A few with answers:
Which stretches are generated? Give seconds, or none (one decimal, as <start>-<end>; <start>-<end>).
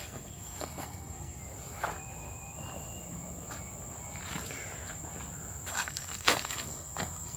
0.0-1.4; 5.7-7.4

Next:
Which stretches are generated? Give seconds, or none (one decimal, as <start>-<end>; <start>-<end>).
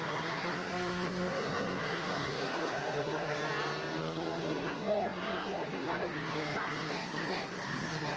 0.0-3.4; 4.0-8.2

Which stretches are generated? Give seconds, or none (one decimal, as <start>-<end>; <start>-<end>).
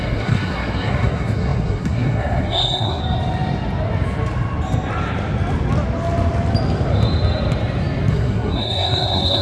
0.0-3.0; 8.1-9.4